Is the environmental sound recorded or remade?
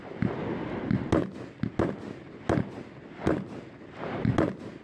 recorded